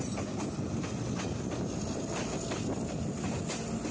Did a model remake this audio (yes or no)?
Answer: no